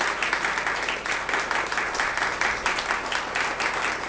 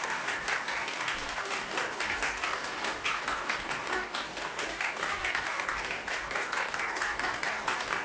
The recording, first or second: first